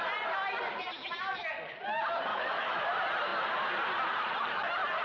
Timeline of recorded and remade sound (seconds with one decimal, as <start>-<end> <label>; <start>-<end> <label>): 0.0-2.3 recorded; 2.3-2.8 remade; 2.8-5.0 recorded